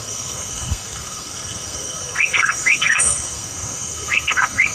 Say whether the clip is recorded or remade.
remade